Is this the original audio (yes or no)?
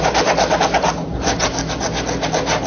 yes